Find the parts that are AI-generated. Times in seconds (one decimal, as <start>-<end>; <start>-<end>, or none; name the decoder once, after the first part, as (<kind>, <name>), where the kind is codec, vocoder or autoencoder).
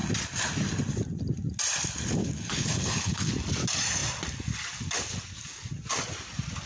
2.2-3.3 (codec, HILCodec)